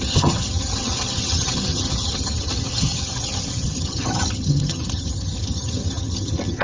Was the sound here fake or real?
fake